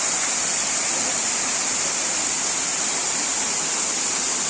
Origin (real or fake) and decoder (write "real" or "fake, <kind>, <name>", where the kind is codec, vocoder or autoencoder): real